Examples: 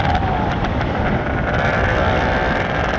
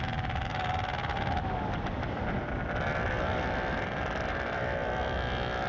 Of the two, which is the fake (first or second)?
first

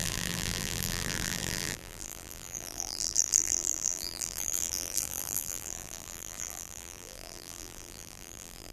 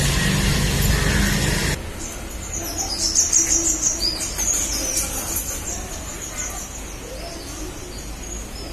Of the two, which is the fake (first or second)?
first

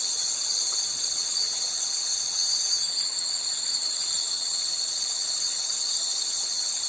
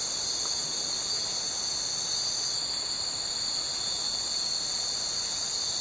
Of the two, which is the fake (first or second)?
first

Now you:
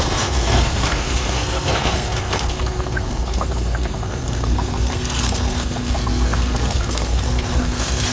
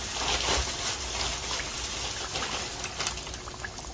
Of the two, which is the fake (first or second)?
first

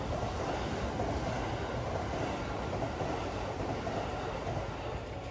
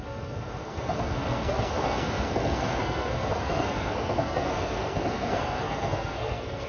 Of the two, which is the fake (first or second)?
second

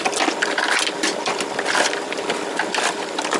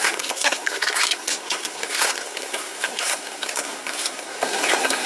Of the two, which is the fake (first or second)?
second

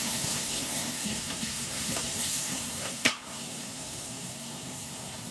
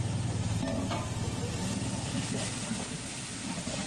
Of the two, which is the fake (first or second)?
first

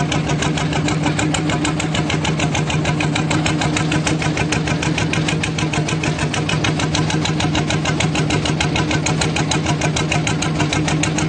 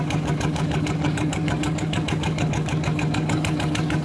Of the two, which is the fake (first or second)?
second